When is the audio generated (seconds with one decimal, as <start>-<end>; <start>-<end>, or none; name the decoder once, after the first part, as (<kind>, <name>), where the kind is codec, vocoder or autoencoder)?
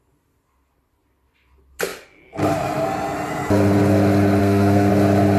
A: 4.4-4.9 (codec, SNAC)